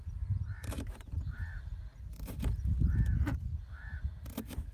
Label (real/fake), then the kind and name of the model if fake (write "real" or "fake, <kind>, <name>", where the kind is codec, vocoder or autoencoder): fake, vocoder, BigVGAN v2